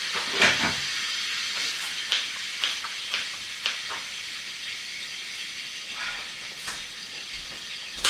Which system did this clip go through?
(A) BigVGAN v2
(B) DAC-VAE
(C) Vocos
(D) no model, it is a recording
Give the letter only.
D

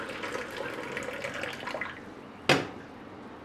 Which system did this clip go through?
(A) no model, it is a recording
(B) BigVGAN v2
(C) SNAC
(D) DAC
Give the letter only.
A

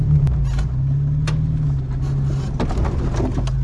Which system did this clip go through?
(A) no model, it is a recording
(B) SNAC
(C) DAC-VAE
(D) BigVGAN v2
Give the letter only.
A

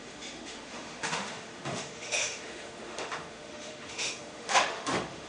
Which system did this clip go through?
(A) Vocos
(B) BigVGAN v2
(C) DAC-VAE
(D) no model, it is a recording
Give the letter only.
C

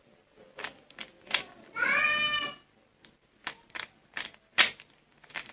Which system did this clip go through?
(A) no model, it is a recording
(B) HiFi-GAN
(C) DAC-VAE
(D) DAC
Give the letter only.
A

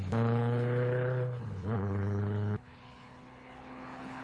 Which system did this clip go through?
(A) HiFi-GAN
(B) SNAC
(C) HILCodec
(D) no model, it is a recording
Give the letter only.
C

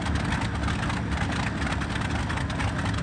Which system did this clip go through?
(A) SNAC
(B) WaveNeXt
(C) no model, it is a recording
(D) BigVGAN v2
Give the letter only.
C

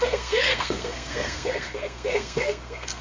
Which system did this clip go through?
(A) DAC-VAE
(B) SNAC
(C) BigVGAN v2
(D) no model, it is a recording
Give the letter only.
B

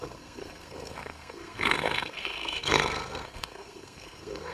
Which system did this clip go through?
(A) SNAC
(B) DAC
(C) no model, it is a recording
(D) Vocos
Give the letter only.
A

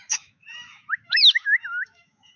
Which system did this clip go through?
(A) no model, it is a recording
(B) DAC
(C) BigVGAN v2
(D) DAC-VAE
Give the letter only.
D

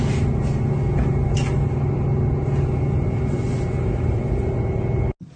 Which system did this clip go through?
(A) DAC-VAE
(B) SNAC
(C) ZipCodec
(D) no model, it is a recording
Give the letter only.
D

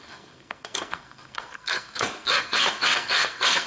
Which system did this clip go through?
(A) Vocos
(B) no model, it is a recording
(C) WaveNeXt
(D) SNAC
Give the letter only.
D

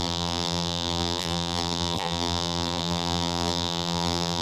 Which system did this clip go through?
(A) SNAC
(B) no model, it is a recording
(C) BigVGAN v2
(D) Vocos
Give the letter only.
C